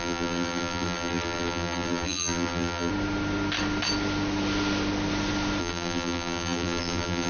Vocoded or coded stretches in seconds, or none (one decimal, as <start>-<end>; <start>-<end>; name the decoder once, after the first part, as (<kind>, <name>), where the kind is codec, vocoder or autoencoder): 0.0-2.9 (vocoder, BigVGAN v2); 5.6-7.3